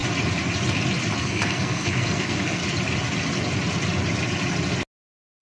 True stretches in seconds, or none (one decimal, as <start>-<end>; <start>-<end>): 0.0-1.2; 2.6-5.4